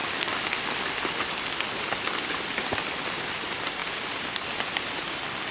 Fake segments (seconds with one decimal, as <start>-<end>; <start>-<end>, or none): none